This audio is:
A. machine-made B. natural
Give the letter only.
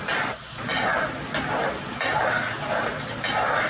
B